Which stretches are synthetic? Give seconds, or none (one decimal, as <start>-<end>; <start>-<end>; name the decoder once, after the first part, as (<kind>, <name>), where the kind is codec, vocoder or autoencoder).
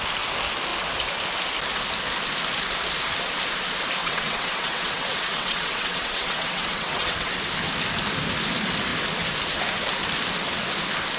4.0-7.4 (vocoder, WaveNeXt)